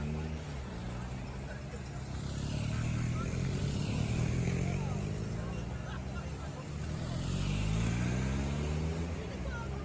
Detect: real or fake real